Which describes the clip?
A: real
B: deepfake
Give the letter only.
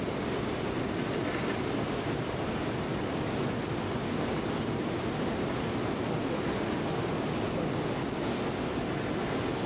A